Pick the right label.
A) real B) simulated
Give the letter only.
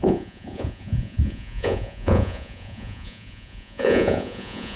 B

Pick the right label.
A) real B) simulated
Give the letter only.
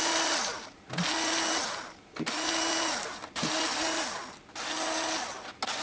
A